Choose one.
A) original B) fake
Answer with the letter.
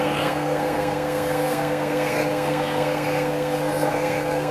B